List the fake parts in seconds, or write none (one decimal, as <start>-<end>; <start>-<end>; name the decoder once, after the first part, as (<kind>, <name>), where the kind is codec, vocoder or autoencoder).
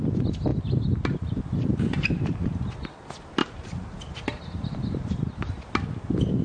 none